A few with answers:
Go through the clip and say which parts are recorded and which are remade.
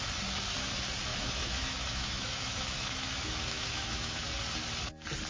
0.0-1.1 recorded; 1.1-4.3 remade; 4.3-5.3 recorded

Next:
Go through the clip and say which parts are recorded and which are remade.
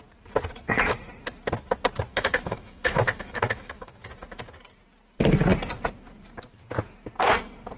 0.0-2.1 recorded; 2.1-3.9 remade; 3.9-7.8 recorded